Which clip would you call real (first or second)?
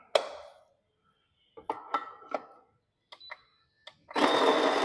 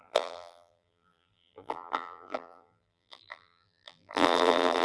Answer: first